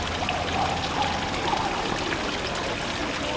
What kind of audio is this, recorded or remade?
recorded